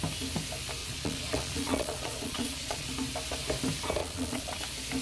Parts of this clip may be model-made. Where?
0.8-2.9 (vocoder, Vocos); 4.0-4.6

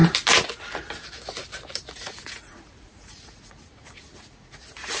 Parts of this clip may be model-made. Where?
1.9-5.0 (vocoder, Vocos)

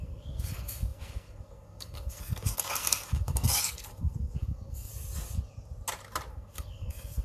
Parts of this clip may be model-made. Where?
0.0-4.9 (codec, SNAC); 6.3-7.2

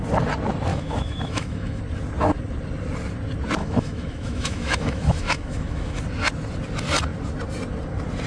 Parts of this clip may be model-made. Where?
0.7-1.8 (autoencoder, DAC-VAE); 3.6-6.0

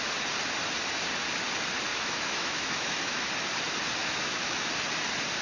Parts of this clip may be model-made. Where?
1.9-3.3 (autoencoder, DAC-VAE); 4.0-4.7